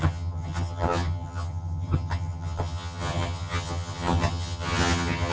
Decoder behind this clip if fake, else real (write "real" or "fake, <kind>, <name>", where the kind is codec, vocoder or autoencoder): fake, vocoder, HiFi-GAN